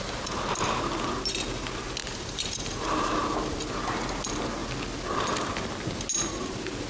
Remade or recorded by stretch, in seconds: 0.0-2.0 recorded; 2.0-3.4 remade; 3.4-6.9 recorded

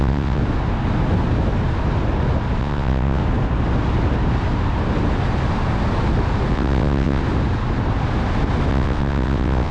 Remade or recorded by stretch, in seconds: 0.0-0.4 remade; 0.4-2.6 recorded; 2.6-3.2 remade; 3.2-6.5 recorded; 6.5-7.2 remade; 7.2-8.7 recorded; 8.7-9.7 remade

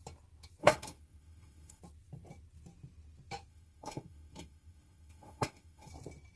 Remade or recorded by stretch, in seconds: 0.0-0.6 recorded; 0.6-1.8 remade; 1.8-3.5 recorded; 3.5-5.9 remade; 5.9-6.4 recorded

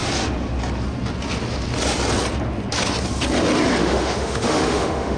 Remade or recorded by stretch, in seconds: 0.0-3.8 recorded; 3.8-5.2 remade